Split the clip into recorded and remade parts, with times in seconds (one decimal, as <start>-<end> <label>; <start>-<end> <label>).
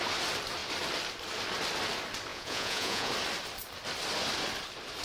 0.0-2.3 recorded; 2.3-3.1 remade; 3.1-5.0 recorded